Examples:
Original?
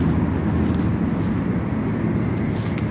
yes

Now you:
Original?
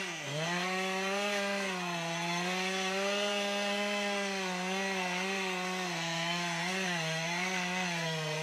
no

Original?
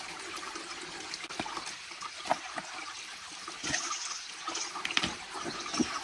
yes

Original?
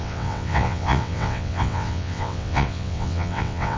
no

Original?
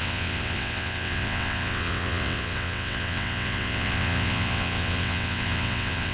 no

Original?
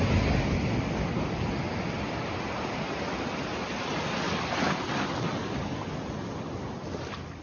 yes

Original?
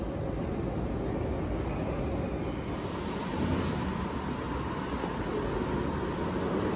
yes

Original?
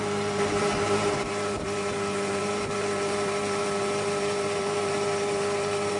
no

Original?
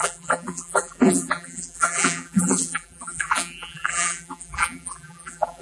no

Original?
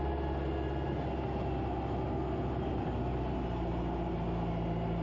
yes